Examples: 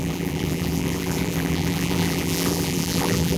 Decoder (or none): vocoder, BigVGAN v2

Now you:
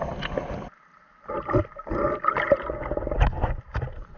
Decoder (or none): none